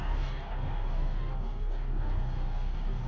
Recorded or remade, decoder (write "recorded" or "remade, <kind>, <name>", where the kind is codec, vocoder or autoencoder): remade, codec, DAC